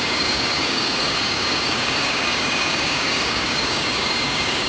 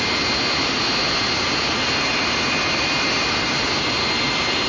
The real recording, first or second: second